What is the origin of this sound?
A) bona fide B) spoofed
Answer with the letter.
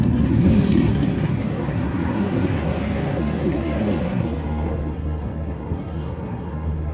B